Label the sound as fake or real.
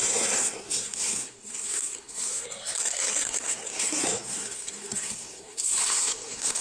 fake